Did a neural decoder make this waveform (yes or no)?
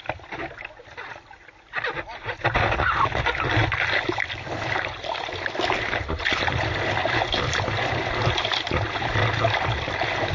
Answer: no